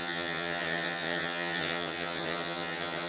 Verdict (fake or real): fake